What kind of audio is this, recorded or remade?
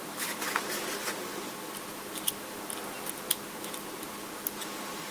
recorded